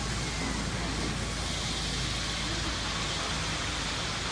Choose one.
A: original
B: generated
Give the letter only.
A